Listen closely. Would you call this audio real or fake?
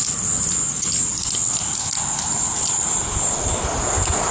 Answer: real